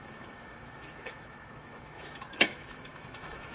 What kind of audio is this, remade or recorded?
remade